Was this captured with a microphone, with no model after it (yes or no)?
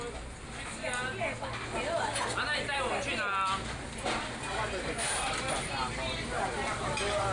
yes